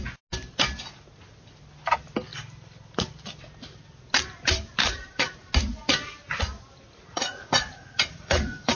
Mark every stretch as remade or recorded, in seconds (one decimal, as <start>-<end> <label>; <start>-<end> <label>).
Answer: 0.0-4.8 recorded; 4.8-5.5 remade; 5.5-7.1 recorded; 7.1-8.7 remade